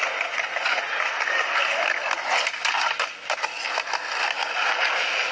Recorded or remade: recorded